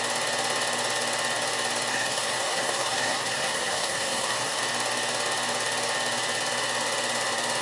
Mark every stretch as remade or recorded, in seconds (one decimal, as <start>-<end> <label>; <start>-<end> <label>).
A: 0.0-1.9 recorded; 1.9-4.6 remade; 4.6-7.6 recorded